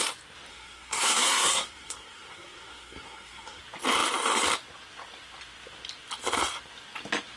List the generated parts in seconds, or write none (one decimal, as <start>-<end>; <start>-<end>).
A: 0.5-3.6